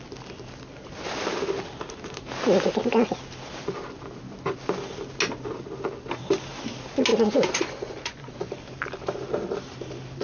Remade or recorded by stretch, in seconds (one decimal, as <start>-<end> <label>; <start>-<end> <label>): 0.0-7.1 recorded; 7.1-8.5 remade; 8.5-10.2 recorded